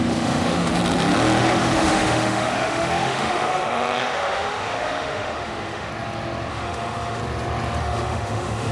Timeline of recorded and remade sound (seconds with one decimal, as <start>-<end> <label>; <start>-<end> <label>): 0.0-0.8 remade; 0.8-1.4 recorded; 1.4-5.9 remade; 5.9-6.5 recorded; 6.5-7.2 remade; 7.2-7.8 recorded; 7.8-8.7 remade